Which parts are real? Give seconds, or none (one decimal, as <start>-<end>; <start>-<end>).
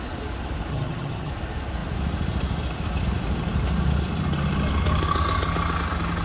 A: 0.0-0.7; 1.3-6.2